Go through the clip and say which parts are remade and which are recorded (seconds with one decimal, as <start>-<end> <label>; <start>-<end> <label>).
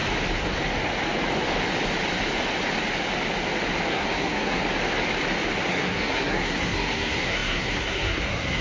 0.0-3.9 recorded; 3.9-4.6 remade; 4.6-5.7 recorded; 5.7-8.6 remade